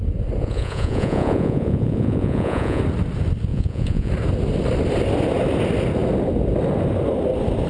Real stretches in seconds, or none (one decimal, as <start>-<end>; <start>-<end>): 0.0-0.4; 2.8-3.5; 4.1-7.7